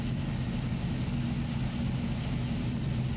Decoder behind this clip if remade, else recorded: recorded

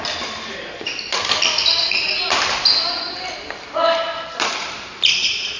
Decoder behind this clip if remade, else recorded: recorded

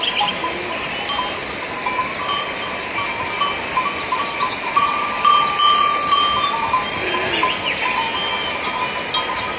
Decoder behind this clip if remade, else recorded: recorded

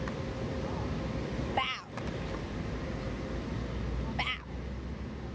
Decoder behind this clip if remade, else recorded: recorded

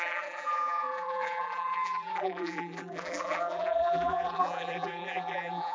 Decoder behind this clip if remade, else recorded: remade, vocoder, BigVGAN v2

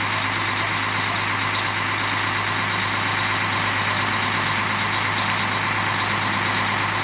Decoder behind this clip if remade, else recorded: recorded